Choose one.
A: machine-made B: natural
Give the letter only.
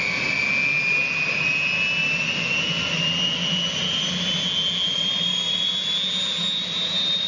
B